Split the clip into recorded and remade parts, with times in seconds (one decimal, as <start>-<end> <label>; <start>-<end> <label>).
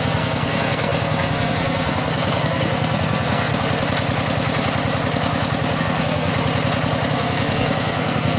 0.0-3.5 remade; 3.5-5.8 recorded; 5.8-6.3 remade; 6.3-7.1 recorded; 7.1-8.4 remade